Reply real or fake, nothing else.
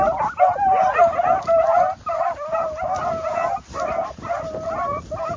real